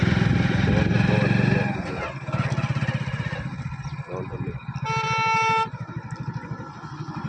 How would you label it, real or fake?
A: real